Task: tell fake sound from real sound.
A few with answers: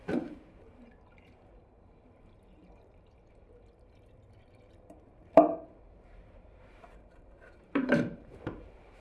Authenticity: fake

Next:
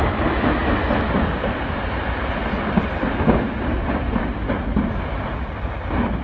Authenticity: real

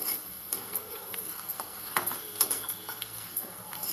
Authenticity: fake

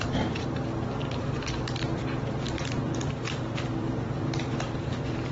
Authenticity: fake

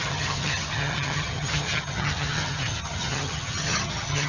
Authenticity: fake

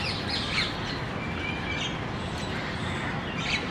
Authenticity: real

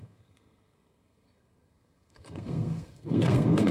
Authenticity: fake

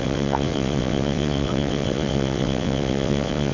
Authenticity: fake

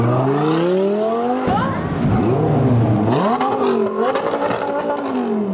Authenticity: real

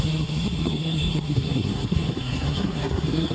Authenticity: fake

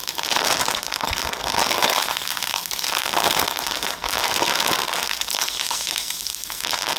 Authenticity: fake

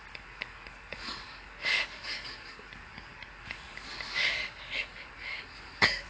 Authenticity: fake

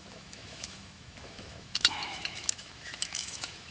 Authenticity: fake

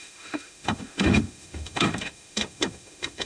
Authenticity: fake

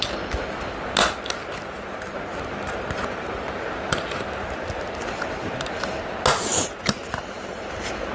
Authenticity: real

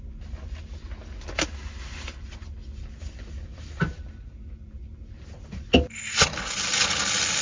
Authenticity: real